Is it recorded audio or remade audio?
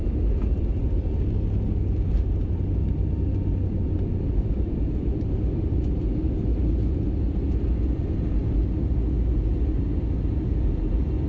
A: recorded